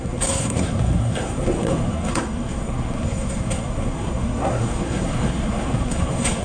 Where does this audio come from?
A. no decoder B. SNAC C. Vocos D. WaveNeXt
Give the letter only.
B